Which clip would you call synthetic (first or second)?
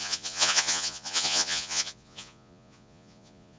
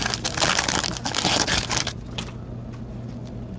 first